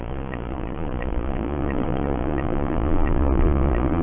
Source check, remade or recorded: remade